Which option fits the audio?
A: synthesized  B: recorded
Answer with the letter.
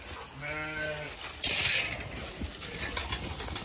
B